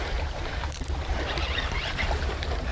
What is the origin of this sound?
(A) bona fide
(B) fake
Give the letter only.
B